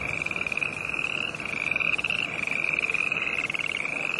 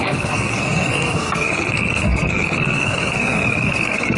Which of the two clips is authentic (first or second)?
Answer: first